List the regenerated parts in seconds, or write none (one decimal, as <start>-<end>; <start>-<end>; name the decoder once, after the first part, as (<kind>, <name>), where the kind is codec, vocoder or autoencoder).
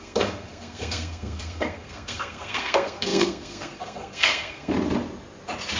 0.0-4.7 (codec, SNAC)